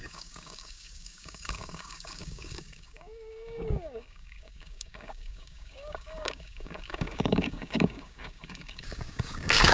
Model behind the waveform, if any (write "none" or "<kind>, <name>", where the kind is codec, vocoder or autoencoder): codec, DAC